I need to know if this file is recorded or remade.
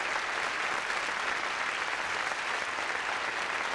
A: recorded